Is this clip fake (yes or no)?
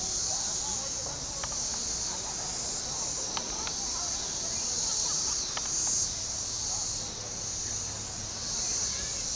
no